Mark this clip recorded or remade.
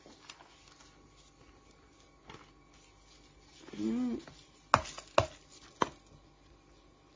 recorded